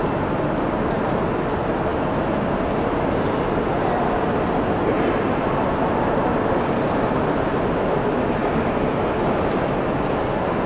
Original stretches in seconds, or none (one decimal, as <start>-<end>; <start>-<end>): 0.0-10.7